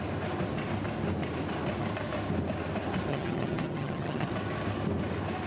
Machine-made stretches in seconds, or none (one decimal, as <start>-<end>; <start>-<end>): 3.1-4.3